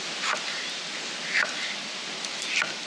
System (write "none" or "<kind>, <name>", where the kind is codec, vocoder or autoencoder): none